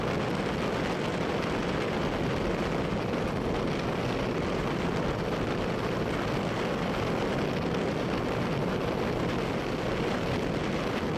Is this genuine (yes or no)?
yes